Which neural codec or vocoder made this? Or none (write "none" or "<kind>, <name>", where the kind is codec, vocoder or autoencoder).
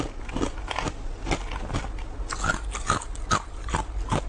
none